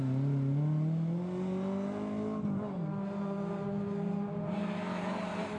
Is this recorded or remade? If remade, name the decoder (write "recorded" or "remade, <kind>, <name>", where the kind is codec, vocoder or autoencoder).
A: recorded